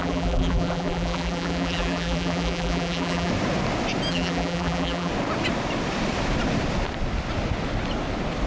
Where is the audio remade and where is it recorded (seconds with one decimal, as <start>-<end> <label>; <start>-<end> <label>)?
0.0-3.3 remade; 3.3-4.1 recorded; 4.1-5.1 remade; 5.1-8.5 recorded